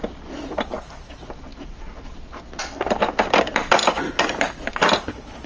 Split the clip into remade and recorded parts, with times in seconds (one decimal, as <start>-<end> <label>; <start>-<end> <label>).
0.0-5.5 recorded